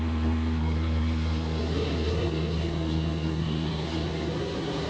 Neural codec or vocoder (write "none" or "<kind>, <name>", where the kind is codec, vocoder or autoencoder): codec, SNAC